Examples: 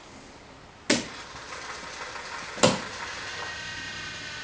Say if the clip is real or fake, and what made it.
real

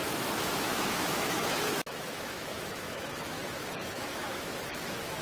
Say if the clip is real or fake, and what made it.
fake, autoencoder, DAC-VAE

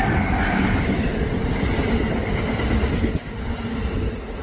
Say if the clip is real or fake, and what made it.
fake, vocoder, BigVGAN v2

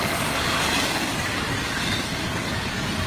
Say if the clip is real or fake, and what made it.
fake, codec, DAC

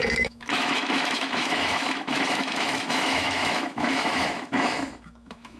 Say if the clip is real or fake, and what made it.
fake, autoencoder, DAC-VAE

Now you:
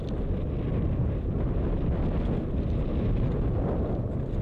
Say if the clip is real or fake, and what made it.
real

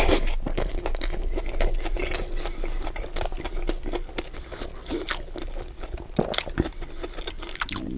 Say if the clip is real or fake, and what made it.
real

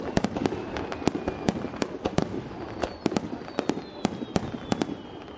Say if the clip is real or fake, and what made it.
real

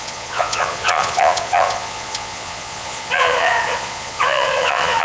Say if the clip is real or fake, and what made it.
fake, vocoder, Vocos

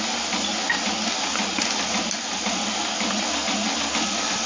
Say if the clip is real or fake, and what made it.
real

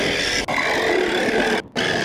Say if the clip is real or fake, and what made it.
real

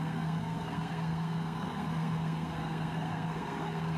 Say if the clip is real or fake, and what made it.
fake, codec, SNAC